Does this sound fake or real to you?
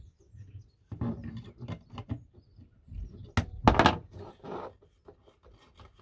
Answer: real